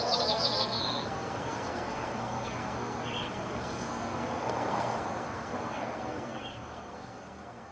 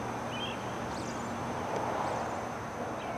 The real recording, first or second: second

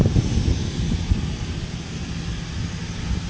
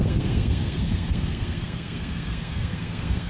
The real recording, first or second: first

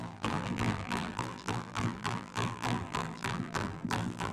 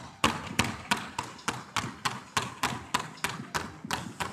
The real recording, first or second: second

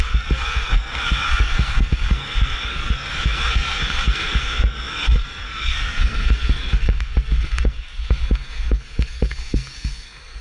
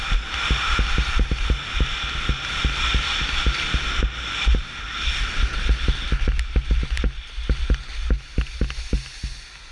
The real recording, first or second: second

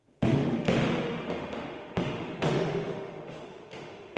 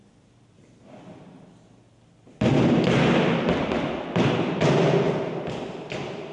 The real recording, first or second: second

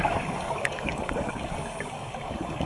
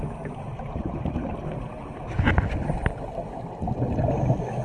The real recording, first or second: second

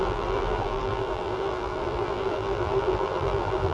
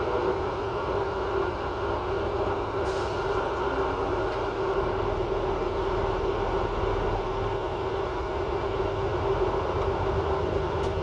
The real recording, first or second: second